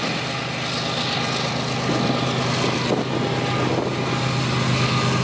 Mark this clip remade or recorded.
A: recorded